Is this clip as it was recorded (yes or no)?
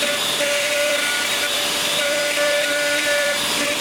no